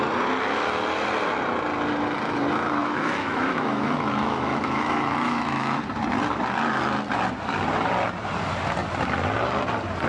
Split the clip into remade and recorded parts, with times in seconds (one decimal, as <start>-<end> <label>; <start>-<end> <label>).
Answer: 0.0-2.8 recorded; 2.8-5.8 remade; 5.8-10.1 recorded

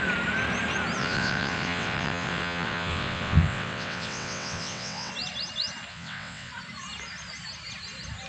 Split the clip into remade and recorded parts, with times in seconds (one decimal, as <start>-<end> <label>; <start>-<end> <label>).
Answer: 0.0-1.0 recorded; 1.0-5.1 remade; 5.1-5.9 recorded; 5.9-6.5 remade; 6.5-8.3 recorded

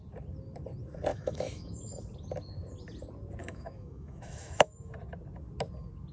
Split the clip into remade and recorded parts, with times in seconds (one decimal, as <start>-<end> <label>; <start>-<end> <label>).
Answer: 0.0-1.1 recorded; 1.1-2.0 remade; 2.0-3.4 recorded; 3.4-4.9 remade; 4.9-6.1 recorded

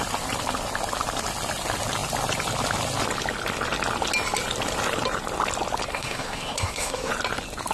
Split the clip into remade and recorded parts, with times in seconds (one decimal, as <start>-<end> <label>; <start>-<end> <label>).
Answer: 0.0-5.9 recorded; 5.9-7.1 remade; 7.1-7.7 recorded

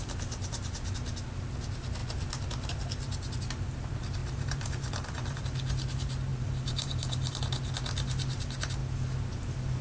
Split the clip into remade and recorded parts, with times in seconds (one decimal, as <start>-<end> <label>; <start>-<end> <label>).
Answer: 0.0-4.2 recorded; 4.2-5.4 remade; 5.4-6.3 recorded; 6.3-7.4 remade; 7.4-9.8 recorded

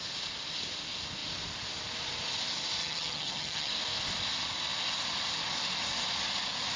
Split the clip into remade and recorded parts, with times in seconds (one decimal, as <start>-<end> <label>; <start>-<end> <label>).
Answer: 0.0-2.8 recorded; 2.8-3.7 remade; 3.7-6.8 recorded